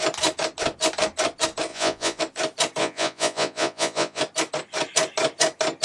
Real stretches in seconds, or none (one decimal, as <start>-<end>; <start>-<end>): 0.0-1.7; 2.2-2.8; 4.2-5.8